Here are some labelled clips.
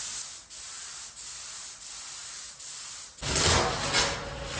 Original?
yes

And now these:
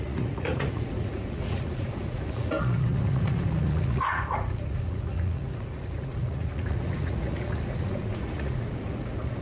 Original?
no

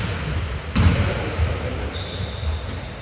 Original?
yes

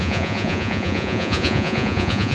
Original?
no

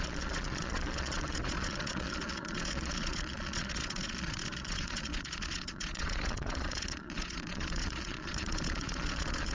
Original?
no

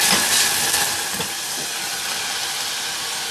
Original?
yes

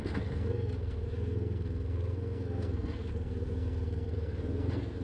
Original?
no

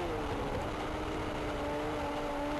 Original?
yes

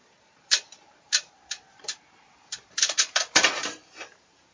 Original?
no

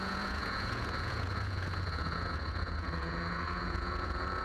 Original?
no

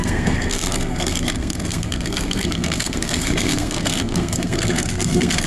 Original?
no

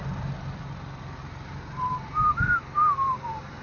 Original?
yes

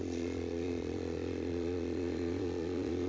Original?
no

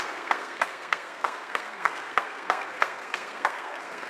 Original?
no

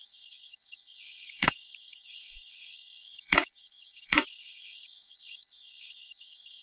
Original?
no